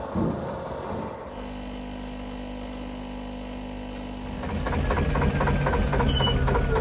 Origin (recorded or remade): recorded